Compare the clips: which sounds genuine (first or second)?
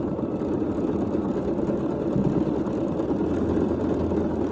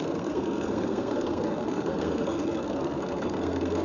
first